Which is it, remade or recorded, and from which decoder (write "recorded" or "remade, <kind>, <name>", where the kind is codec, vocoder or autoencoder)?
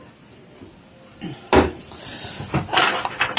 recorded